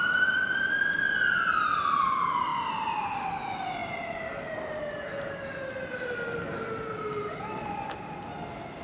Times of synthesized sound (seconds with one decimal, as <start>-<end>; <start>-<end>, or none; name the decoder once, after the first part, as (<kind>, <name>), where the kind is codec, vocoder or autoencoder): none